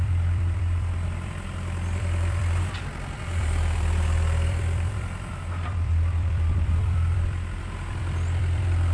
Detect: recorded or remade remade